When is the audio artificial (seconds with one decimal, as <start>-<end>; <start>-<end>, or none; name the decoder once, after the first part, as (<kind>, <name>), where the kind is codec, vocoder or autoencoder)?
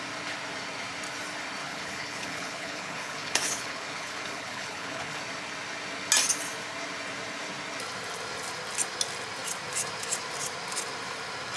1.6-5.2 (codec, HILCodec)